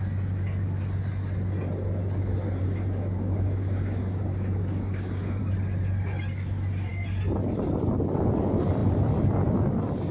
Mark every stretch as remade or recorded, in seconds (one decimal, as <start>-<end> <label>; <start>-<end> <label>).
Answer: 0.0-2.6 recorded; 2.6-5.4 remade; 5.4-10.1 recorded